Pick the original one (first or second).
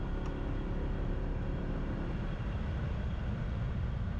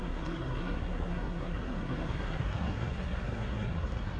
first